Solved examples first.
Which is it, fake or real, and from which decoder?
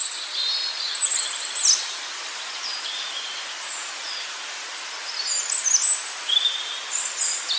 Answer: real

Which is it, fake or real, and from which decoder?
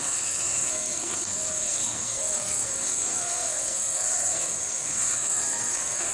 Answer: fake, codec, SNAC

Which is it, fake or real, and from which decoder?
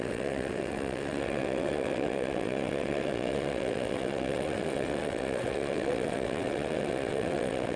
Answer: fake, vocoder, WaveNeXt